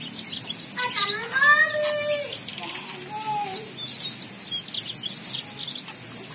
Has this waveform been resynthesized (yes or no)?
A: no